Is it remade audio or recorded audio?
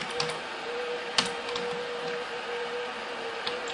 recorded